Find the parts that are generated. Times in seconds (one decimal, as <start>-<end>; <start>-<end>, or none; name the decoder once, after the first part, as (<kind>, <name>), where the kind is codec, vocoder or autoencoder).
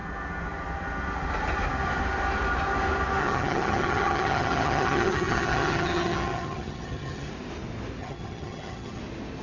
3.2-7.3 (vocoder, HiFi-GAN); 8.0-9.0